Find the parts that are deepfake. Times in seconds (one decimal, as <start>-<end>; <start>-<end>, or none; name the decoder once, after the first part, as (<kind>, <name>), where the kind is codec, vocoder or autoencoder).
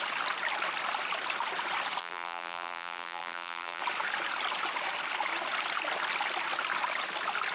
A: 2.0-3.8 (vocoder, BigVGAN v2)